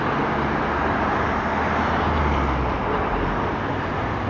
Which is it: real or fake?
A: real